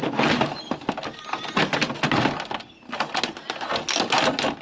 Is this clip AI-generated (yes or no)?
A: no